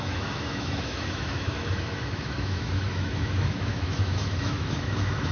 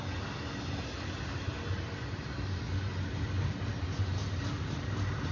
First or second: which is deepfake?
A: first